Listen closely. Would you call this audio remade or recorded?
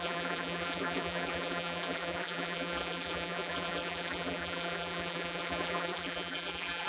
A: remade